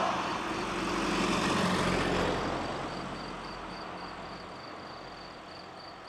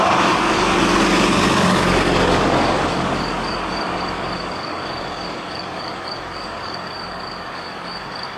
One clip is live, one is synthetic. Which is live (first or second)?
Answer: first